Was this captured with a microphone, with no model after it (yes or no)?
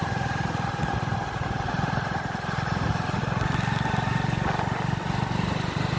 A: yes